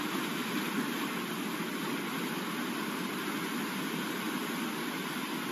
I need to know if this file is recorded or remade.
recorded